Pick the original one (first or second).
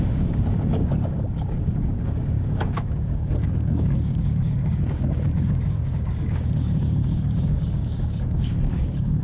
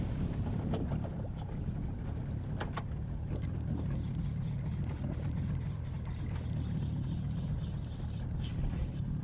second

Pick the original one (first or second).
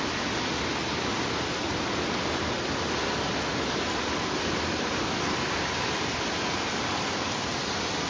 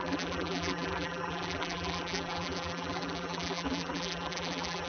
first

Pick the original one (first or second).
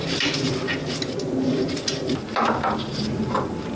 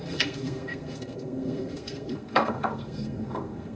first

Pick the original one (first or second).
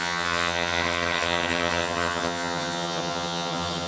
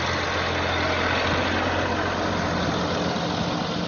second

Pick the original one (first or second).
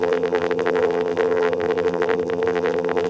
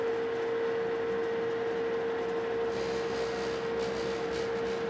second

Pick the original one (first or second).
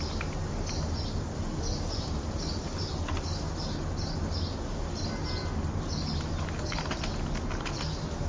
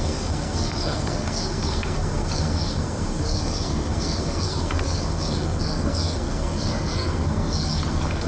first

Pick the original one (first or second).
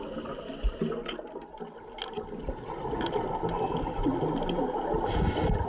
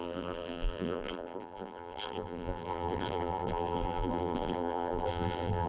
first